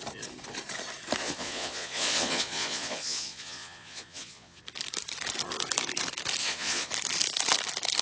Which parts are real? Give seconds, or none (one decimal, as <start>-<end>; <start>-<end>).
0.0-1.2; 4.6-6.4; 6.9-8.0